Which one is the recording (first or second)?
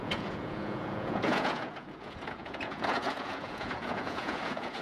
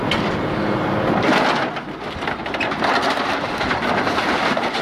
second